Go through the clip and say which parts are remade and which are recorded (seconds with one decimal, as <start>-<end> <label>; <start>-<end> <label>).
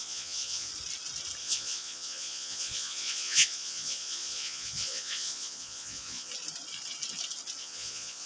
0.0-0.7 remade; 0.7-1.4 recorded; 1.4-6.3 remade; 6.3-7.6 recorded; 7.6-8.3 remade